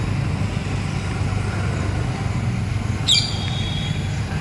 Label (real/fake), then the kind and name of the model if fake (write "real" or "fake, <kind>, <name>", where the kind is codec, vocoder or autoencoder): real